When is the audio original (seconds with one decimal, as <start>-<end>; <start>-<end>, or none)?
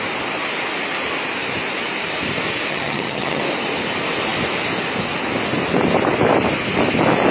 0.0-2.7; 3.4-7.3